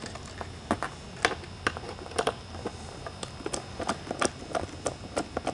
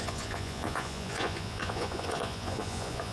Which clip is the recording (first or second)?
first